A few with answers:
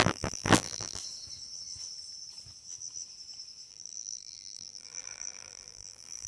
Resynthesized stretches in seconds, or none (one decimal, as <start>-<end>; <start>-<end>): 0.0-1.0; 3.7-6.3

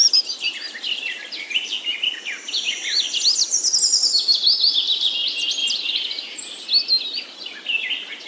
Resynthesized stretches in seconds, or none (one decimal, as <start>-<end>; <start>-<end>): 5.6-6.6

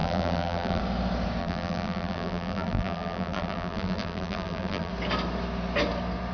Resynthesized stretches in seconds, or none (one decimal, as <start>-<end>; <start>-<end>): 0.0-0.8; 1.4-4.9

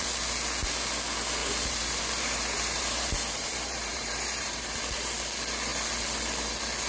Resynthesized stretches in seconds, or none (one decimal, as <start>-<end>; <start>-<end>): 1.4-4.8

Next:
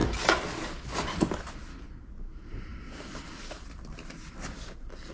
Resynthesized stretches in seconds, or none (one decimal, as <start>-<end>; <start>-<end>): none

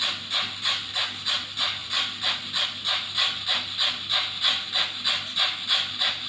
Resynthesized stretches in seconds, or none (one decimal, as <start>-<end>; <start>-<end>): none

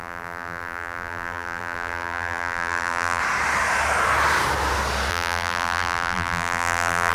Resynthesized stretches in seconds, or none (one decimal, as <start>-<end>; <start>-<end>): 0.0-3.2; 5.1-7.1